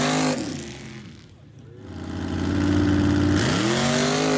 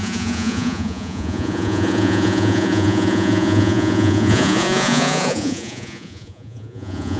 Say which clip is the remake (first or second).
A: second